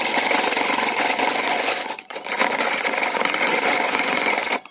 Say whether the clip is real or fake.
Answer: fake